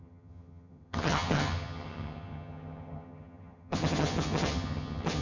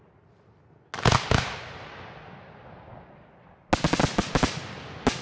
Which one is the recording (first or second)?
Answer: second